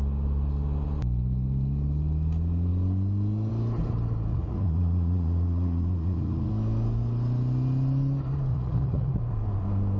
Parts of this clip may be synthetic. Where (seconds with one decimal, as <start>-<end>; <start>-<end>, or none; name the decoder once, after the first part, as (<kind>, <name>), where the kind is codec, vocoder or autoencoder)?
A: 4.3-6.5 (vocoder, Vocos); 8.5-9.2